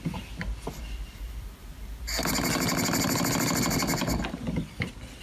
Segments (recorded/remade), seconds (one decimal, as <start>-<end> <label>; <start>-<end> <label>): 0.0-5.2 recorded